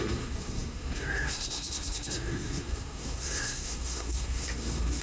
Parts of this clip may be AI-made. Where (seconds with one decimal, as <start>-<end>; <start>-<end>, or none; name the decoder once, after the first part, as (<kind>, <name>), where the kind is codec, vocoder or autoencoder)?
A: 0.0-5.0 (codec, SNAC)